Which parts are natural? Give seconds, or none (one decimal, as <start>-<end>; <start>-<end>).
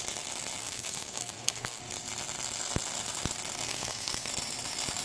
0.0-0.6; 1.8-3.7; 4.3-5.0